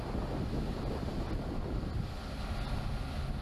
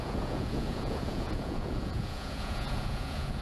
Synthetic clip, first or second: second